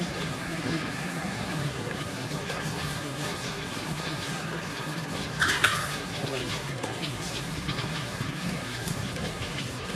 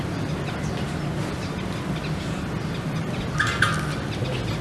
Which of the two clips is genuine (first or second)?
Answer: second